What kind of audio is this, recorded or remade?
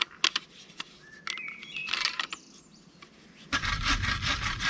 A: recorded